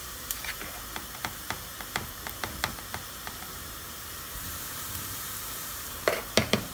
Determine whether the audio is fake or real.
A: fake